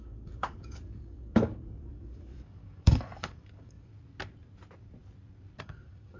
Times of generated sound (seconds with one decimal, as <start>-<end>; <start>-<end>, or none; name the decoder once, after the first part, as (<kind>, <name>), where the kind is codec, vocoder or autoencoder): 0.0-3.9 (codec, DAC); 5.6-6.2